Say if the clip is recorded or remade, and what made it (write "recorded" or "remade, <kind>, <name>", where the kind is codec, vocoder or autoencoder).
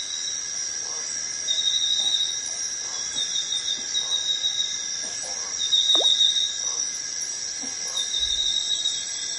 recorded